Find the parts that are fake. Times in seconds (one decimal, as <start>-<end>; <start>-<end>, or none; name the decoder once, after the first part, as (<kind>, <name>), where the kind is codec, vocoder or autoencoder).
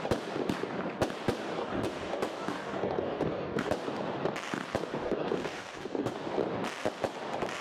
1.6-3.7 (codec, DAC); 4.9-6.3